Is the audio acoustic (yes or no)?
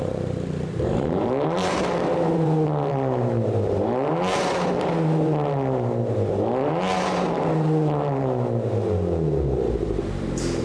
no